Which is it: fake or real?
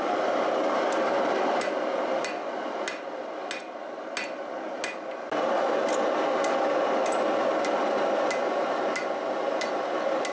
real